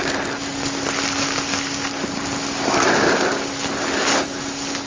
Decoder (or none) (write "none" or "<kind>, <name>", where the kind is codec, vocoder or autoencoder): none